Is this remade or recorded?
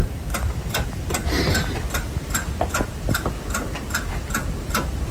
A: remade